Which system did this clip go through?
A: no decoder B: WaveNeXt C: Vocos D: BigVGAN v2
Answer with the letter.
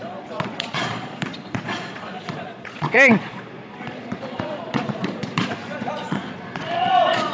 C